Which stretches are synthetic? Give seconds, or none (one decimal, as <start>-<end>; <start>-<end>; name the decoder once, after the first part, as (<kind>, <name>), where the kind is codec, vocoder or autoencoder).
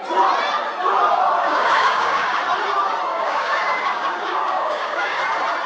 1.4-2.4 (codec, DAC); 3.1-5.2